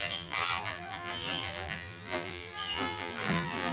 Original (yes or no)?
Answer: no